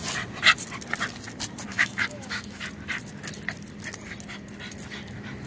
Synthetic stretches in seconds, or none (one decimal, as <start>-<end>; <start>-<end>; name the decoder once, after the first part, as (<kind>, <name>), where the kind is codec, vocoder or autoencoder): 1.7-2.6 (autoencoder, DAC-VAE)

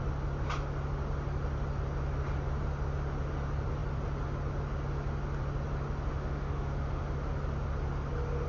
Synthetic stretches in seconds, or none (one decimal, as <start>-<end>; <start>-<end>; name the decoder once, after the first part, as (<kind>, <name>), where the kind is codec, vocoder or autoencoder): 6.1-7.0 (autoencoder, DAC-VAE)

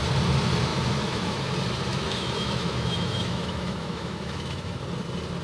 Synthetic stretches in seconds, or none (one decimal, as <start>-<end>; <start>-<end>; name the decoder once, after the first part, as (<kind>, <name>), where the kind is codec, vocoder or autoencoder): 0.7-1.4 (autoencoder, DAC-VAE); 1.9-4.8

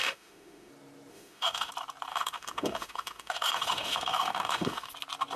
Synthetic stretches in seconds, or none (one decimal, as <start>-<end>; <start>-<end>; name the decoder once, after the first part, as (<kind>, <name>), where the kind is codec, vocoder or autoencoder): 0.0-0.7 (autoencoder, DAC-VAE); 1.1-1.7; 2.1-4.9